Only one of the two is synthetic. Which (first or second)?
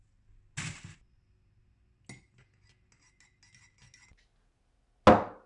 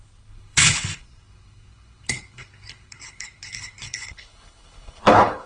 second